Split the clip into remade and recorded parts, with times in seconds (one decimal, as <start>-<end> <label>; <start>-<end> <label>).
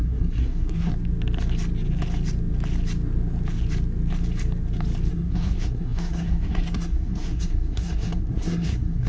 0.0-0.9 remade; 0.9-5.1 recorded; 5.1-9.1 remade